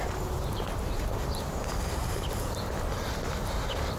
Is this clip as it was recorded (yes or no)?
no